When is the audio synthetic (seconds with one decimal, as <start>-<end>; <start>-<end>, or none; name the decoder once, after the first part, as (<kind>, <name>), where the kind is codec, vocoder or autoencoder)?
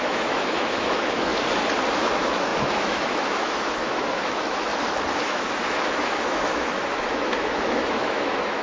0.0-1.3 (autoencoder, DAC-VAE); 1.9-4.7; 5.3-8.6